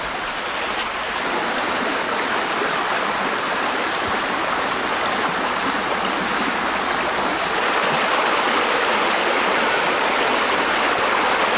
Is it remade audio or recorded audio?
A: recorded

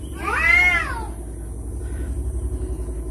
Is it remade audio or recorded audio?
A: recorded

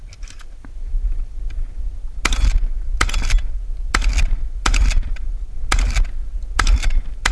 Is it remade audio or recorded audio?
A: recorded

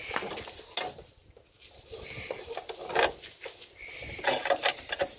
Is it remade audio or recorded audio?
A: recorded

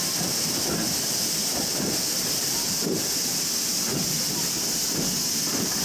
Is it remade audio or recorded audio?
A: recorded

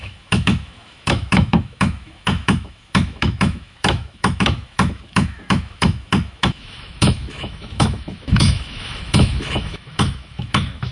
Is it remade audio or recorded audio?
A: remade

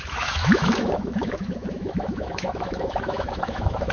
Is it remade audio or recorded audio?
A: remade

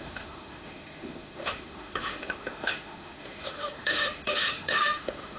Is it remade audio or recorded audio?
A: remade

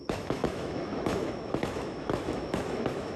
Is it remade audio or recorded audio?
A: remade